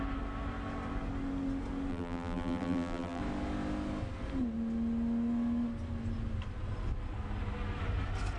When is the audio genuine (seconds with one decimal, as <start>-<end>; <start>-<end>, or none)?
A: 0.0-1.9; 3.2-8.4